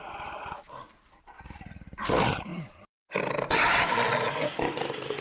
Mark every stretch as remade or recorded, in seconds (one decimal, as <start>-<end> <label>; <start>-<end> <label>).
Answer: 0.0-5.2 recorded